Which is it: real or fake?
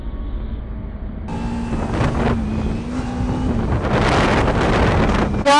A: real